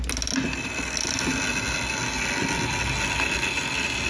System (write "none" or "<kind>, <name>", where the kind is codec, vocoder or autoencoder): none